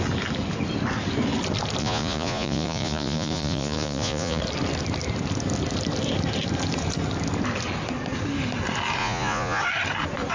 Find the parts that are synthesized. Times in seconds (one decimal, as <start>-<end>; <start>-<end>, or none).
1.8-4.4; 9.0-9.6

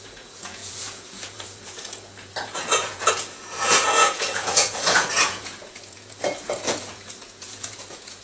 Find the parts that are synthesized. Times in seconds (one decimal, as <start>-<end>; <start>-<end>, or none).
0.0-8.2

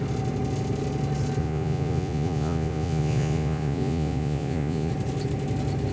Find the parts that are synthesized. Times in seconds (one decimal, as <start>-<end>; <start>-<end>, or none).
1.4-4.9

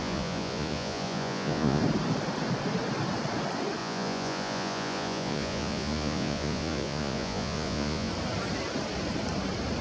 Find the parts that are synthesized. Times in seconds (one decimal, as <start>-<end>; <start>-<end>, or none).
0.0-1.8; 3.8-8.1

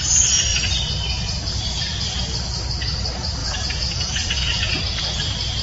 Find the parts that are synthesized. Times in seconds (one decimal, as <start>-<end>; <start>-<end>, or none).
3.4-4.8

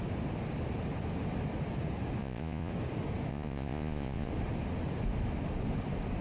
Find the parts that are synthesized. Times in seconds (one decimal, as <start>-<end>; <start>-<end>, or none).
2.2-2.7; 3.3-4.3

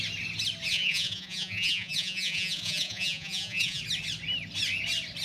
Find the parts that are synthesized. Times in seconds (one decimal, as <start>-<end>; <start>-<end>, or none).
0.7-3.8